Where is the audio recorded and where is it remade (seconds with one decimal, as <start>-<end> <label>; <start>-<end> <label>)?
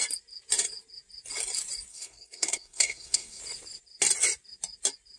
0.0-1.9 recorded; 1.9-3.4 remade; 3.4-5.2 recorded